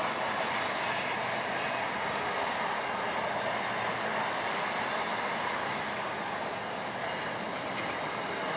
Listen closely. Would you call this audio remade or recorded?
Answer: recorded